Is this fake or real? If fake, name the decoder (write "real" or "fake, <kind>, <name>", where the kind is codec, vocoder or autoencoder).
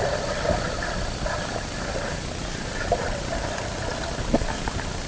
real